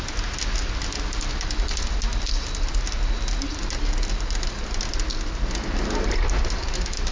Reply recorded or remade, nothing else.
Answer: recorded